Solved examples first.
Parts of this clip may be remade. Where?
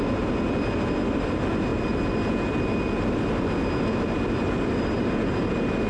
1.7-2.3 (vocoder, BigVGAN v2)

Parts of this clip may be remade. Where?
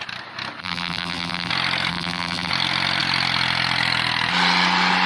0.6-1.5 (vocoder, BigVGAN v2); 1.9-2.5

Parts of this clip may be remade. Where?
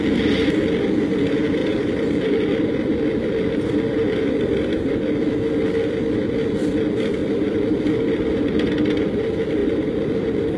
1.6-4.9 (vocoder, BigVGAN v2); 7.2-7.8; 9.6-10.6